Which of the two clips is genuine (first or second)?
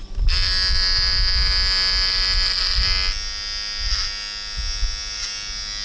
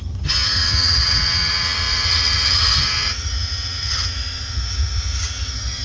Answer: first